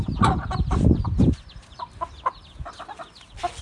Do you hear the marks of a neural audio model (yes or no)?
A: no